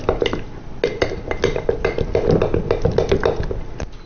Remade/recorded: recorded